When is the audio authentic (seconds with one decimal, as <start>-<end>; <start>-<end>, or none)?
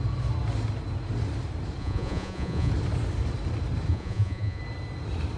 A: 0.0-1.8; 2.7-3.9; 4.6-5.4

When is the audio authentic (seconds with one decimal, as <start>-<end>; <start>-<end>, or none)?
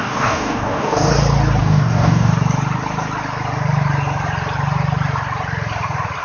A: 1.1-1.6; 2.3-6.2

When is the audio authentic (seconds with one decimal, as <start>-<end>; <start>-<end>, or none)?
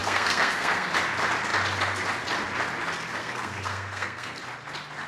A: 0.9-3.2; 4.4-5.1